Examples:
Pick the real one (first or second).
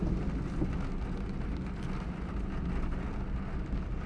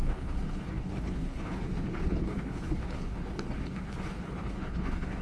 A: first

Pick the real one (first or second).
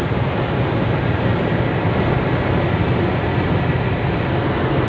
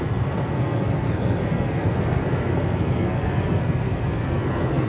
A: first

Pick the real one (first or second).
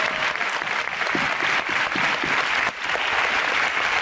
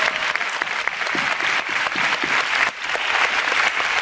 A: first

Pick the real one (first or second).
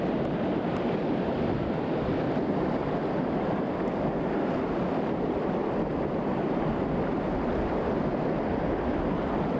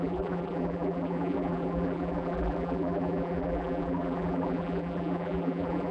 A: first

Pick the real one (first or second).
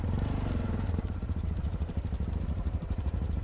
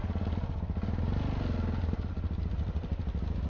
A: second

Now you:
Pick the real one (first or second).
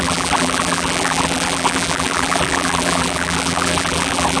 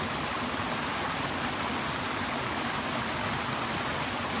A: second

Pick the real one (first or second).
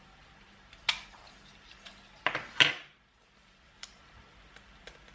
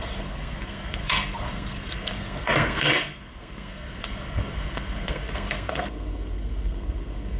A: first